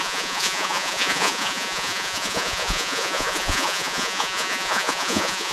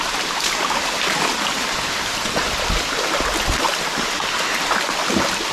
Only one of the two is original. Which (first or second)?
second